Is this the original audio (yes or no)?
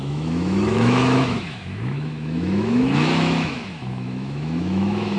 no